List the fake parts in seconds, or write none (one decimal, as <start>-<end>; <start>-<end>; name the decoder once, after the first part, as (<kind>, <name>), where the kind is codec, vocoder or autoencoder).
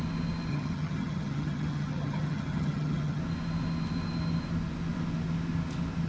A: 0.5-3.2 (vocoder, HiFi-GAN)